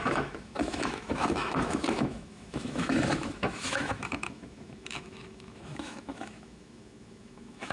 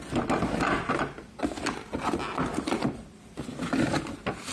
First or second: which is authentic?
second